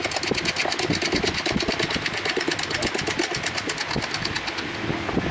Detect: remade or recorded recorded